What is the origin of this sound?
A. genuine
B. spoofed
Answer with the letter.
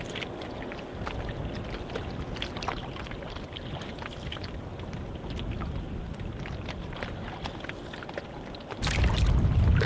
A